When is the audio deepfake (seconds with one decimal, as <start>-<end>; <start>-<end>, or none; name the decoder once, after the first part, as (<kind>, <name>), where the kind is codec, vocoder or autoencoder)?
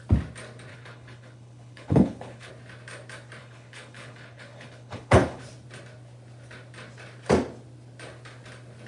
0.7-2.5 (codec, HILCodec); 3.4-5.4